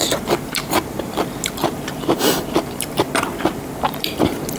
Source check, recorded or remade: remade